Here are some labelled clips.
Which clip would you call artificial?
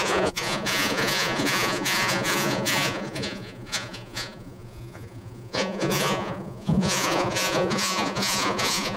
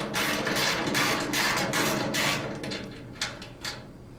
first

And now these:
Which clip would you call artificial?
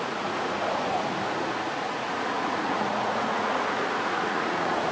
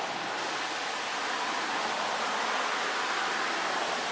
first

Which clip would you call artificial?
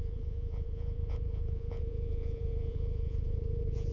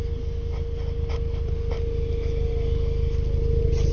first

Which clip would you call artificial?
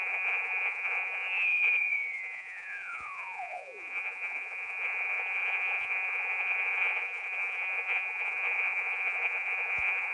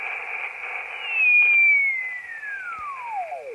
first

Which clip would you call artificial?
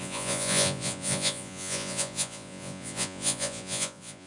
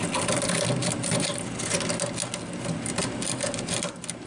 first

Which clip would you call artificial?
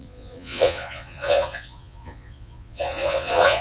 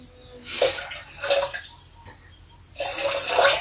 first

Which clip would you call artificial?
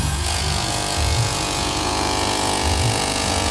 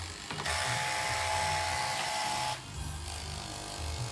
first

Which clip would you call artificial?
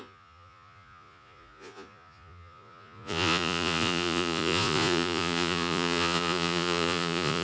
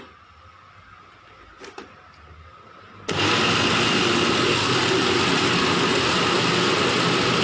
first